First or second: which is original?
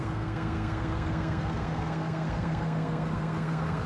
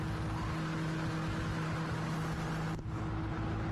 second